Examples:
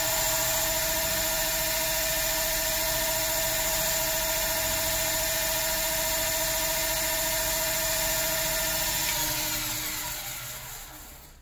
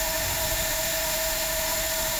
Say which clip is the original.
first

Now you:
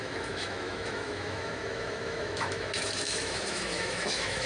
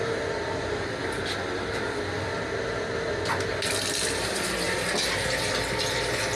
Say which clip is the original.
second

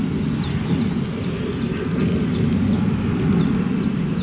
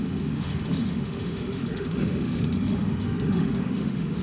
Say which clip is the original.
first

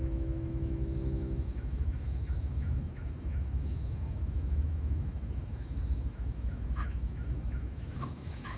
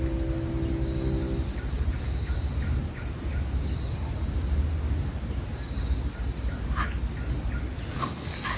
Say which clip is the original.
second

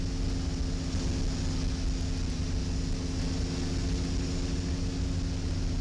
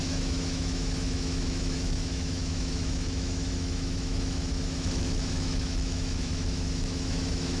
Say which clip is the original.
first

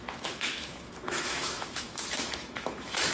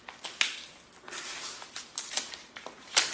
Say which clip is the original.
second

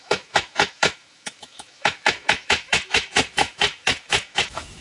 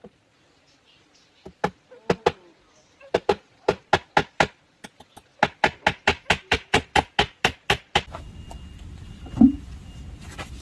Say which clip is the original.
second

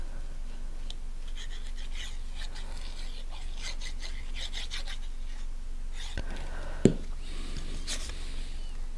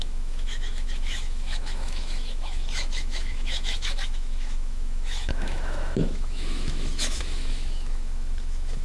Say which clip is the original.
first